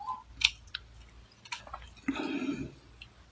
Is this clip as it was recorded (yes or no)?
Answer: yes